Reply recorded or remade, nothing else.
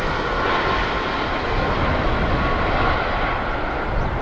recorded